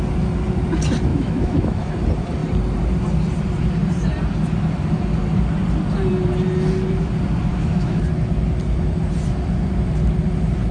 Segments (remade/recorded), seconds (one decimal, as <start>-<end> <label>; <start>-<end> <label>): 0.0-1.1 recorded; 1.1-1.9 remade; 1.9-7.5 recorded; 7.5-8.0 remade; 8.0-10.7 recorded